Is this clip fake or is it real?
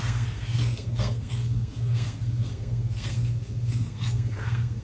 fake